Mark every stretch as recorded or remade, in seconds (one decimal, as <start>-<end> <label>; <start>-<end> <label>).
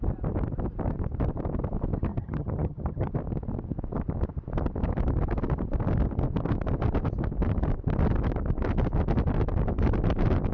0.0-2.1 recorded; 2.1-3.1 remade; 3.1-10.5 recorded